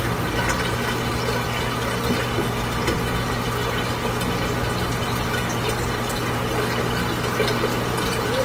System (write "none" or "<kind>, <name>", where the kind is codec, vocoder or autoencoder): none